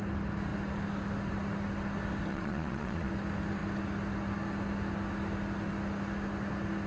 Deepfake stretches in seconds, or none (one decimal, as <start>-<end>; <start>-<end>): 2.3-3.1